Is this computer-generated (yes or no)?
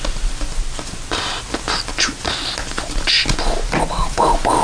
no